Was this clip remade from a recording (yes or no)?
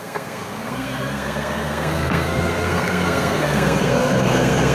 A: yes